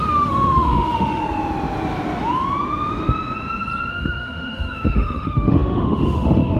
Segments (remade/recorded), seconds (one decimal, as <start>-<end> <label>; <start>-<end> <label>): 0.0-1.2 remade; 1.2-3.9 recorded; 3.9-6.6 remade